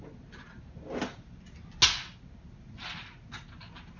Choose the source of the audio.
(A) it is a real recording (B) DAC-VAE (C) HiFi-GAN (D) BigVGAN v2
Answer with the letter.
A